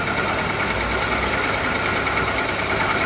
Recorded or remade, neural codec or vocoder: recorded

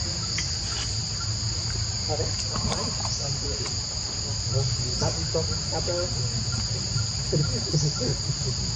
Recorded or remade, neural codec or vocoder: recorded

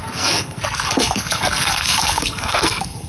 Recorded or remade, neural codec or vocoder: remade, codec, SNAC